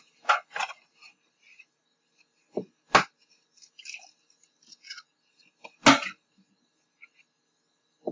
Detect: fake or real real